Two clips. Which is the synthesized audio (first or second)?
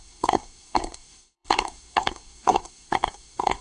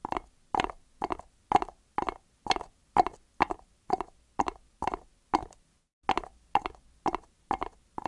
first